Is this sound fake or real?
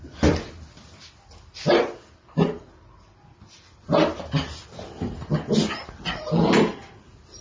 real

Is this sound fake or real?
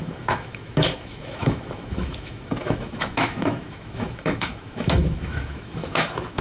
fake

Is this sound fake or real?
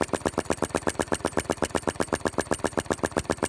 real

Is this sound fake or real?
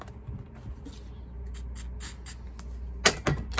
real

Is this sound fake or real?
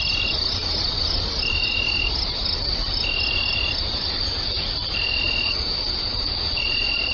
real